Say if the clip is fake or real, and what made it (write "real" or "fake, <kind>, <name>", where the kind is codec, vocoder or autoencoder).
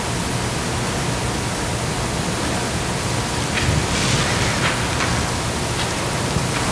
real